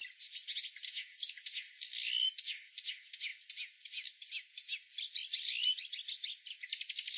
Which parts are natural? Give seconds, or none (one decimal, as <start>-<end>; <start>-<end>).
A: 0.0-3.3; 4.5-5.2; 6.1-7.2